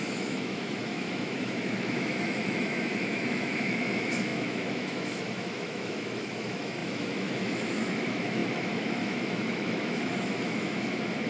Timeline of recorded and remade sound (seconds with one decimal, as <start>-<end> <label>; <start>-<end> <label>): 0.0-11.3 remade